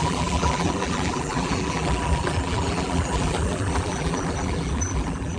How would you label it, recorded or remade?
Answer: remade